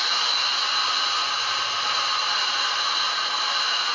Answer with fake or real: real